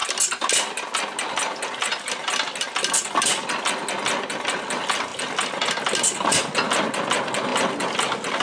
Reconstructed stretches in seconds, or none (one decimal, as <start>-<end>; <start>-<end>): none